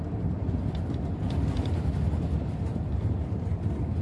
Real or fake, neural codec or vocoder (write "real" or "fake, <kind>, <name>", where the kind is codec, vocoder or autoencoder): real